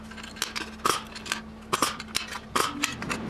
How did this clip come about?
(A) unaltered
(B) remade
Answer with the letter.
A